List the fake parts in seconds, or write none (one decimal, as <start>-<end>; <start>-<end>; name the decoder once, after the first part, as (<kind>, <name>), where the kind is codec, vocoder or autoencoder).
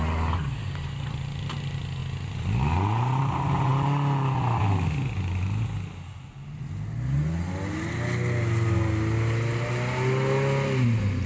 none